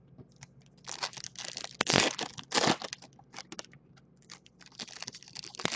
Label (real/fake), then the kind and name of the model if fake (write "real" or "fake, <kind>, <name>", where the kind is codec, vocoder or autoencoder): real